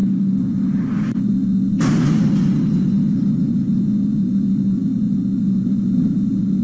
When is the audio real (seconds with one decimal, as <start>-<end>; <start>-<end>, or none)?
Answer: 0.0-6.6